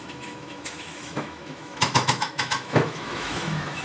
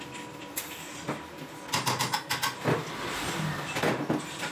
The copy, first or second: first